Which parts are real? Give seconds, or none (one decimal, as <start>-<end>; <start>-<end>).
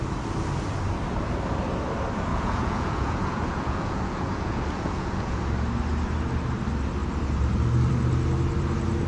0.0-2.3; 5.5-9.1